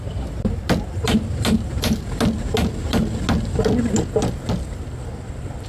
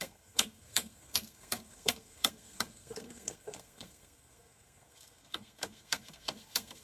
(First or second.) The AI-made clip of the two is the second